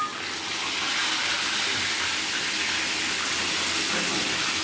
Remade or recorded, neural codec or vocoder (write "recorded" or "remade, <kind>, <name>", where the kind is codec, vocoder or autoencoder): recorded